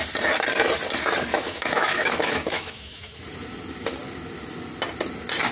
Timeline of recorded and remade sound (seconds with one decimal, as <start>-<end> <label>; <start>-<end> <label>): 0.0-1.3 recorded; 1.3-3.1 remade; 3.1-5.5 recorded